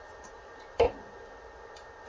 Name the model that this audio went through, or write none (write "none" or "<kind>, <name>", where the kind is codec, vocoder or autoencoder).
none